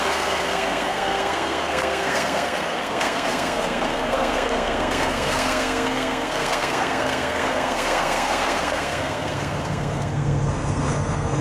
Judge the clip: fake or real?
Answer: fake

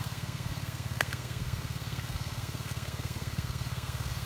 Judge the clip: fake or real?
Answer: fake